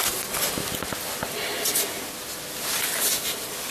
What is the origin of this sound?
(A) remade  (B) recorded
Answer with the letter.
B